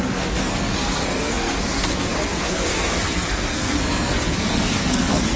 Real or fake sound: fake